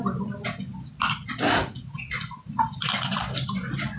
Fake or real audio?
real